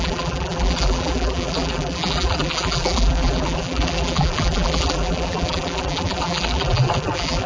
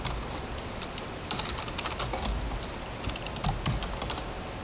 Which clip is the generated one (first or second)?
first